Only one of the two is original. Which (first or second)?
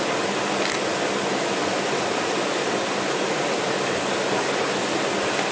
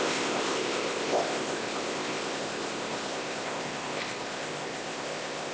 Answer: first